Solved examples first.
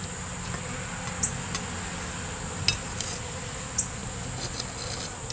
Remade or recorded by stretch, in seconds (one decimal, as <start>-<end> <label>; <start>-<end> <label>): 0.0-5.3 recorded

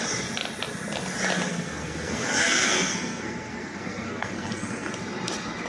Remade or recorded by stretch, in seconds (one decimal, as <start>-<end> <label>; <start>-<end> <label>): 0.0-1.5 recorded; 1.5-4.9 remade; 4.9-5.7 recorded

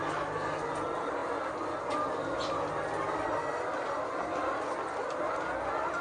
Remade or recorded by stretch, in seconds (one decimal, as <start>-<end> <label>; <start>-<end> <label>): 0.0-6.0 recorded

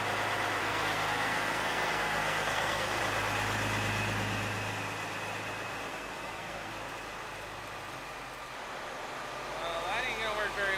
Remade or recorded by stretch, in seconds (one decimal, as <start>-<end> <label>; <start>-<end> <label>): 0.0-0.6 recorded; 0.6-3.0 remade; 3.0-5.9 recorded; 5.9-6.7 remade; 6.7-10.8 recorded

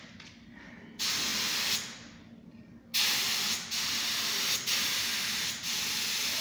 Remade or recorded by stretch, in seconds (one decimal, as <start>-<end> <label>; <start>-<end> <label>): 0.0-6.4 recorded

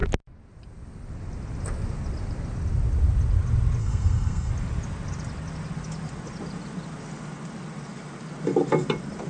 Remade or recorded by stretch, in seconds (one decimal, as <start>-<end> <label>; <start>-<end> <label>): 0.0-3.8 recorded; 3.8-4.5 remade; 4.5-9.3 recorded